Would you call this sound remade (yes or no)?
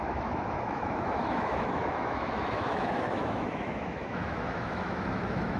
yes